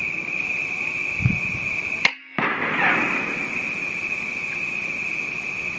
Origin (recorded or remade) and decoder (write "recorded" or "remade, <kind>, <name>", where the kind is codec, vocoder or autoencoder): recorded